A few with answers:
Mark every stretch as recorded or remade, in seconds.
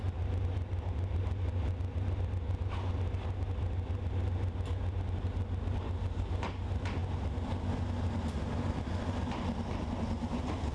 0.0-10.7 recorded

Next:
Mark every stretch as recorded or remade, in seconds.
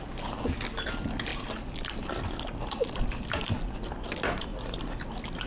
0.0-1.3 recorded; 1.3-2.2 remade; 2.2-4.5 recorded; 4.5-5.1 remade; 5.1-5.5 recorded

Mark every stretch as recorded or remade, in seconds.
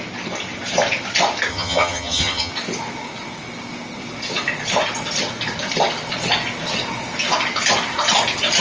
0.0-1.5 recorded; 1.5-2.5 remade; 2.5-8.6 recorded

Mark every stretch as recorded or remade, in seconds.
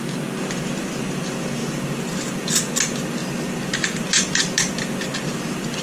0.0-5.8 recorded